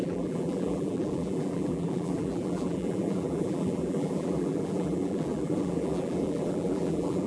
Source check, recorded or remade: remade